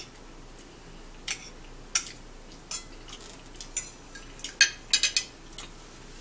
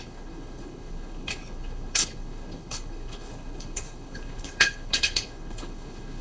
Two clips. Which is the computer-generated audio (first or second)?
second